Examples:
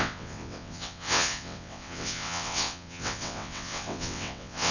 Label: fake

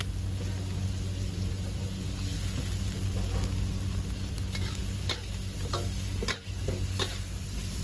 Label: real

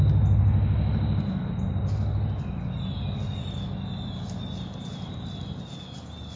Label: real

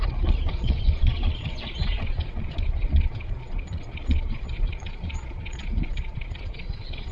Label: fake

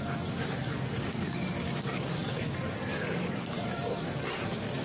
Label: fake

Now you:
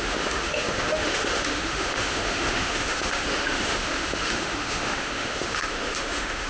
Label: fake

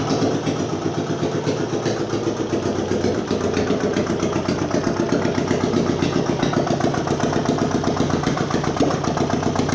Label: real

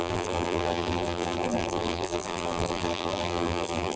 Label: fake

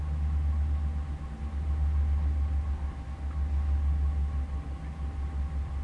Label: real